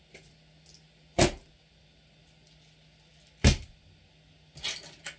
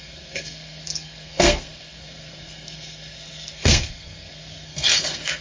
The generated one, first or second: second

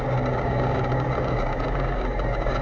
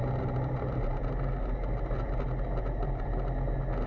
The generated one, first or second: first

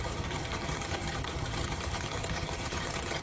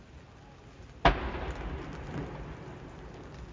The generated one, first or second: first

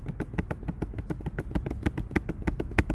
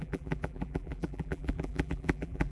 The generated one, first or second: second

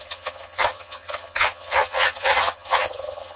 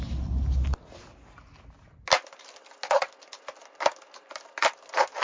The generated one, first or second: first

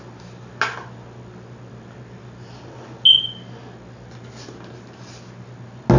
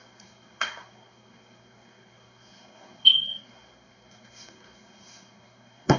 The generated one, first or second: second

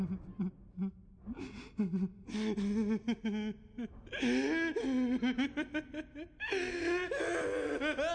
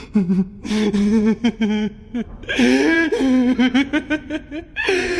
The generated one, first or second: second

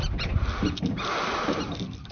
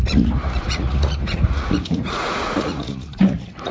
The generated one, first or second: second